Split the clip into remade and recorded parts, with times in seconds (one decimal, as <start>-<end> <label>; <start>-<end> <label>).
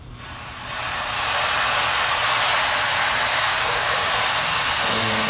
0.0-3.3 recorded; 3.3-4.1 remade; 4.1-5.3 recorded